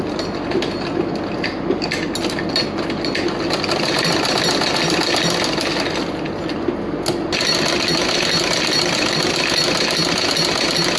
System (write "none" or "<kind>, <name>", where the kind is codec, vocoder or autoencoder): none